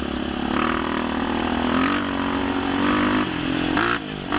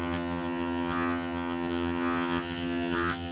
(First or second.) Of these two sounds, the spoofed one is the second